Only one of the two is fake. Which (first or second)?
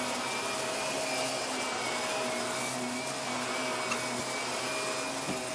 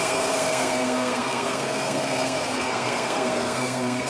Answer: second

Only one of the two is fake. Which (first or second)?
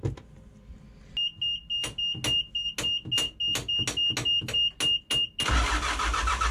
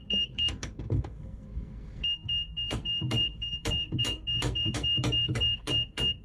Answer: second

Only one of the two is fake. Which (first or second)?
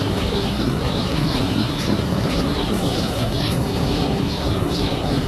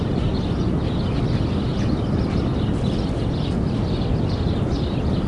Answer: first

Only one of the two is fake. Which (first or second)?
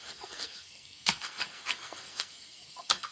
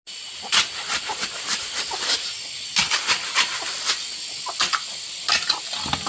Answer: first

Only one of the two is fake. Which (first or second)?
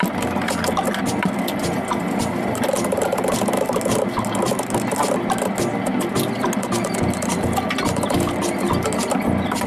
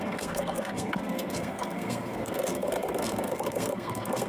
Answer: second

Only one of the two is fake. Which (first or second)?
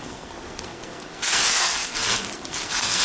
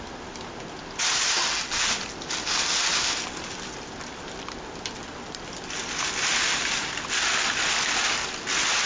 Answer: first